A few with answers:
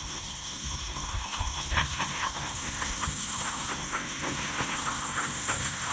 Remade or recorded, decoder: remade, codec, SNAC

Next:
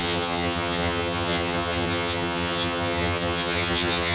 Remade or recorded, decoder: remade, vocoder, HiFi-GAN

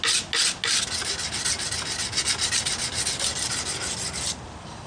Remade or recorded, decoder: recorded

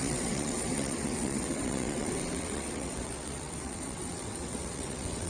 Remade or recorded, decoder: remade, vocoder, WaveNeXt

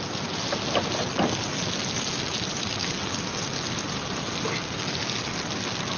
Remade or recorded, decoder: recorded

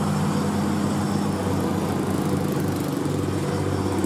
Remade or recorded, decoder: recorded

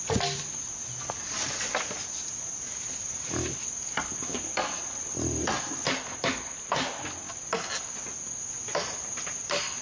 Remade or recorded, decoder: recorded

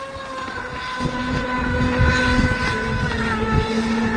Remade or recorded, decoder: recorded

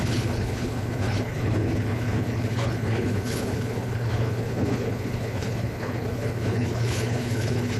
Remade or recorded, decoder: remade, codec, HILCodec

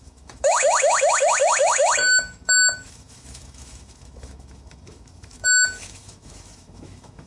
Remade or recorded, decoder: remade, autoencoder, DAC-VAE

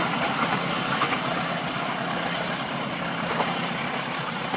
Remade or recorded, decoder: recorded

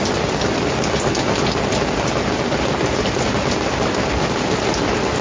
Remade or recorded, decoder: recorded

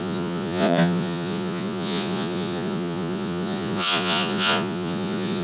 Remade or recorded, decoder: remade, vocoder, Vocos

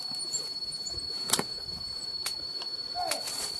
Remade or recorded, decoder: remade, vocoder, BigVGAN v2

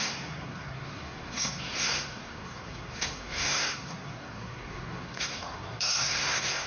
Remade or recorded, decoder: remade, codec, SNAC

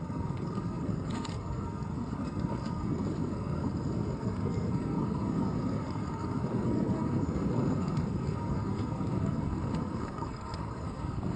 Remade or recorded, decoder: remade, codec, SNAC